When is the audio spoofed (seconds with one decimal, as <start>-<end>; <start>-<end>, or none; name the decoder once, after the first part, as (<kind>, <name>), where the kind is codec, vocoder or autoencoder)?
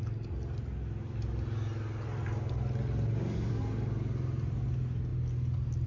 none